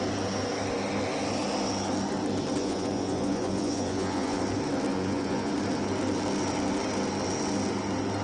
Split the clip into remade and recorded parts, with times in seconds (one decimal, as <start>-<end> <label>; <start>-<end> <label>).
0.0-2.6 recorded; 2.6-4.4 remade; 4.4-4.9 recorded; 4.9-5.5 remade; 5.5-8.2 recorded